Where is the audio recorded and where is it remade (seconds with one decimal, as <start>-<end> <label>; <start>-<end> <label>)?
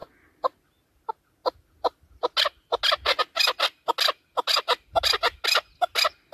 0.0-6.3 recorded